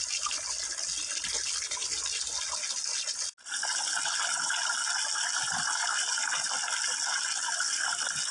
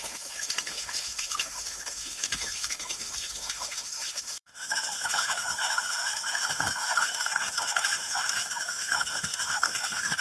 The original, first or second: first